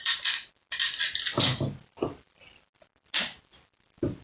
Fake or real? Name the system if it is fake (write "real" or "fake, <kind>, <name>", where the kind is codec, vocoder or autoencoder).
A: real